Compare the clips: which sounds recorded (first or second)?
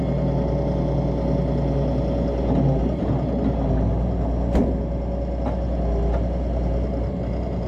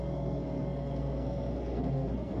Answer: first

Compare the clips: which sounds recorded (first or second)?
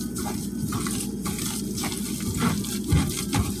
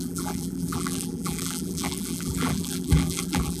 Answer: first